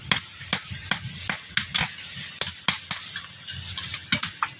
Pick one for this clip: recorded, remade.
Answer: recorded